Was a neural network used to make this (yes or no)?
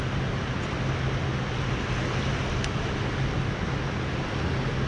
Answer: no